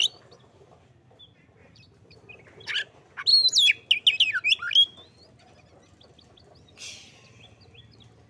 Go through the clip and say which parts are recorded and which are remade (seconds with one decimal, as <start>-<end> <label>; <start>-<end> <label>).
0.0-8.3 recorded